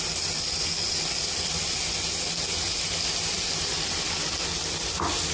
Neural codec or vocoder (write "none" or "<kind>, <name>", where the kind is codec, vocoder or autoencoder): none